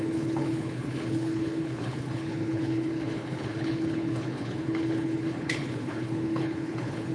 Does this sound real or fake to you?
fake